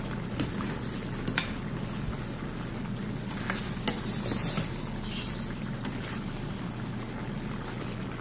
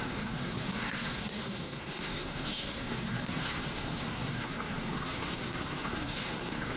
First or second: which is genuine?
first